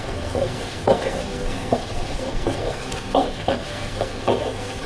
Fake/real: fake